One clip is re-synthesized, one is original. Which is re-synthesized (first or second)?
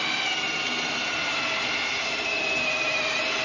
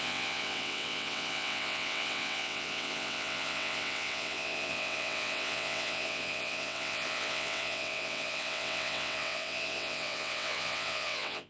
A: second